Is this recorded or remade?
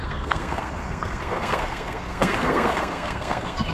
remade